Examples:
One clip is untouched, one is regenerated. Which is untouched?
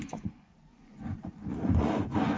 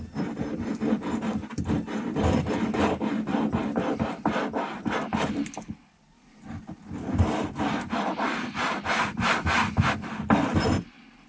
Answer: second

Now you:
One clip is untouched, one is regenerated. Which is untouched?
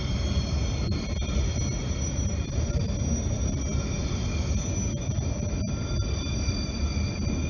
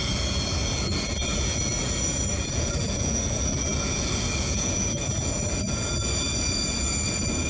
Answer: first